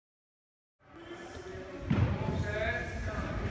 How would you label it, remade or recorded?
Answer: recorded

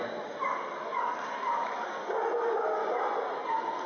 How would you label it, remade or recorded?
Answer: recorded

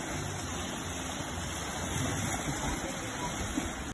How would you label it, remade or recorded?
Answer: recorded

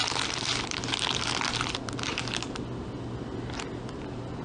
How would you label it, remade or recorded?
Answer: recorded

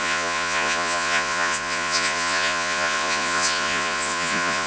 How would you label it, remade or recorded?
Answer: remade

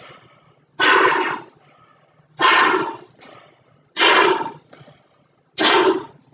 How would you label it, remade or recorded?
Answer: recorded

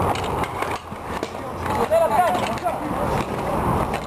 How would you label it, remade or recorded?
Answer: recorded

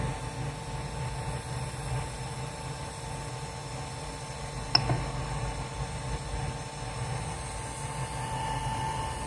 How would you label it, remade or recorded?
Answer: recorded